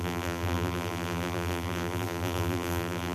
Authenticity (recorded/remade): remade